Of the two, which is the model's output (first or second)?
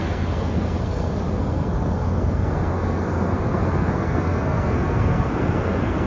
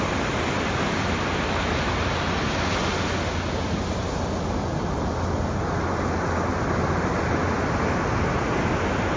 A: first